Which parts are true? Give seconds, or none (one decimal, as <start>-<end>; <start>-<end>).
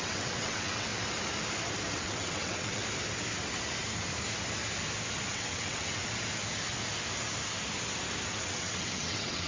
0.9-1.9; 2.8-5.3; 6.0-8.3